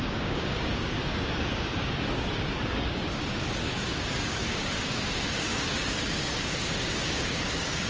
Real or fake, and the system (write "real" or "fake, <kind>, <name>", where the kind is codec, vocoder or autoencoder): fake, codec, DAC